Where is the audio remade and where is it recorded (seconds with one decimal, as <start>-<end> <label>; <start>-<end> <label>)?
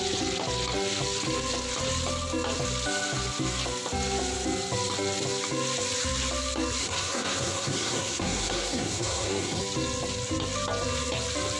0.0-6.8 recorded; 6.8-9.6 remade; 9.6-11.6 recorded